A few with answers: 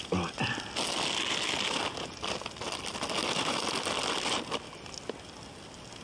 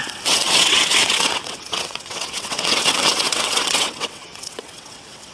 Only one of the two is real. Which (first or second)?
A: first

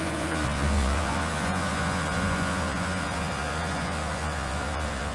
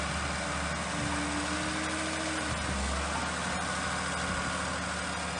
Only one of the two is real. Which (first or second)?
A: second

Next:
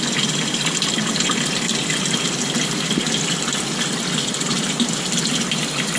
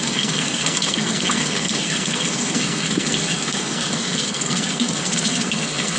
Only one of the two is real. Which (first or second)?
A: first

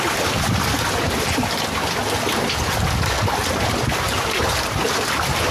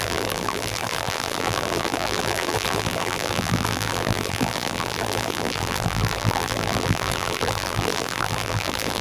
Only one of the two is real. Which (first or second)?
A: first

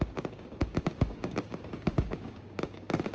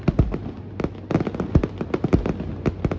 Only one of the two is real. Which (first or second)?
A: second